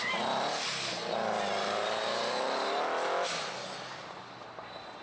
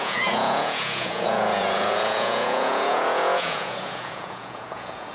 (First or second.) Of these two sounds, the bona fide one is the first